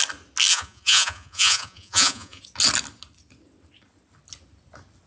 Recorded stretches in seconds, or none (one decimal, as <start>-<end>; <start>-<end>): 0.0-0.5; 2.4-5.1